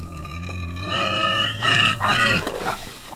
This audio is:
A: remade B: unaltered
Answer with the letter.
A